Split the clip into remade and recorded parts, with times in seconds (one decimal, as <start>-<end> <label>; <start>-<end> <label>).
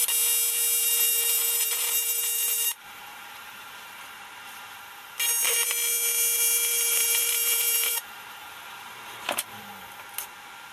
0.0-0.8 recorded; 0.8-4.8 remade; 4.8-6.7 recorded; 6.7-9.6 remade; 9.6-10.7 recorded